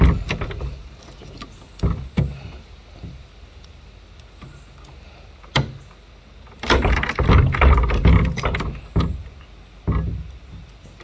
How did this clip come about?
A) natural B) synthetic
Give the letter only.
A